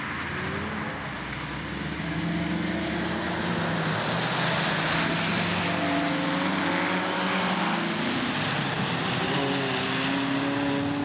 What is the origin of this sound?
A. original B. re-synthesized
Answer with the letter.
A